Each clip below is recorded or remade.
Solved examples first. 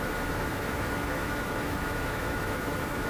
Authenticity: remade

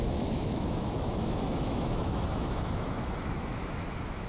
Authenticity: remade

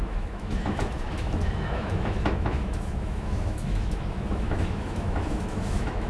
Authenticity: remade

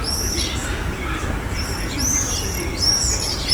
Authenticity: recorded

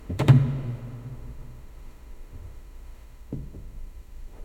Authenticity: remade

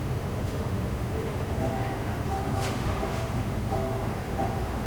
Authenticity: remade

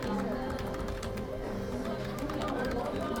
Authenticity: recorded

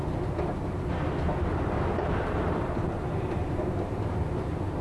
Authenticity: recorded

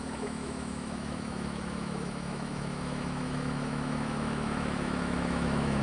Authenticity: remade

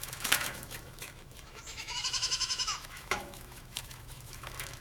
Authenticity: remade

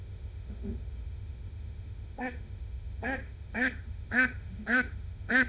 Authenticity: remade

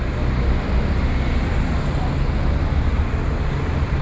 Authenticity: recorded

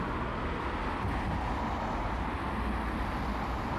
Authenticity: recorded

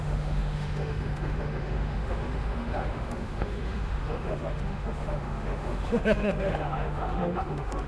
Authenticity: remade